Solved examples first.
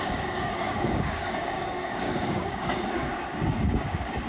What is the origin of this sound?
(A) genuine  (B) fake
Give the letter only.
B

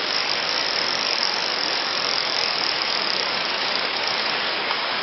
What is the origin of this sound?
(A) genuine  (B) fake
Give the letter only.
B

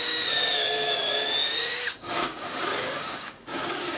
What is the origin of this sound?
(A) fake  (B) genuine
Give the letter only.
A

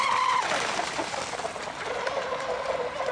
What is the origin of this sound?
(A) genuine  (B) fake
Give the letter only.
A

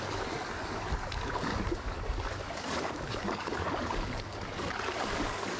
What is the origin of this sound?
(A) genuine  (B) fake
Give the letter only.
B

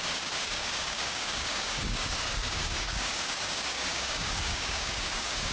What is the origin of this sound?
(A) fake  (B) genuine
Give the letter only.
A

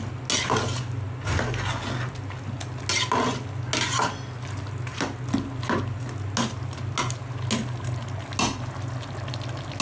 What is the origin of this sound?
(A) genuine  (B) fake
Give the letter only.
A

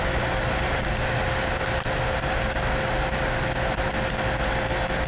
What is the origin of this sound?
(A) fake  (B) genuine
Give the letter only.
B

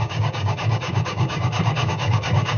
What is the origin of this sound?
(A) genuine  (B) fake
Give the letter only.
B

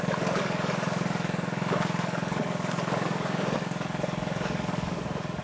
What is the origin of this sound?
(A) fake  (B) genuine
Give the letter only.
A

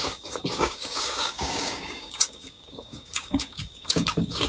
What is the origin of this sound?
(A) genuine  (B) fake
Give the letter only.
B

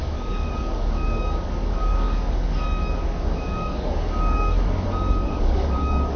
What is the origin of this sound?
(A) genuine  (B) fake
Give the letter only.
B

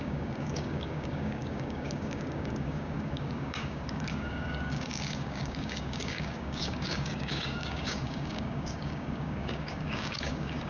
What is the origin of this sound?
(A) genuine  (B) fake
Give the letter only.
B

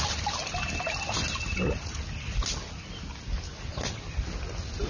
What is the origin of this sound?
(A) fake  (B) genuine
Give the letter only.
B